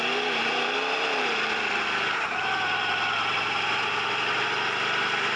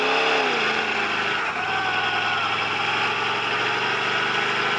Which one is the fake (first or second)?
first